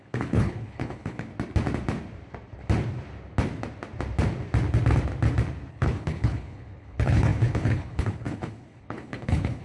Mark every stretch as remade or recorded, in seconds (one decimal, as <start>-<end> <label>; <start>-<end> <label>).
0.0-1.3 remade; 1.3-5.7 recorded; 5.7-9.6 remade